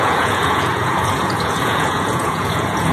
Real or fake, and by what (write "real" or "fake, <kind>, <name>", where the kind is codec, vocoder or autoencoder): fake, vocoder, Vocos